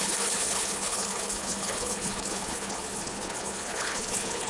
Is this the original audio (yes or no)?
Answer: no